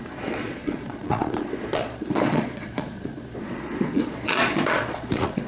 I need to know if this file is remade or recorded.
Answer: remade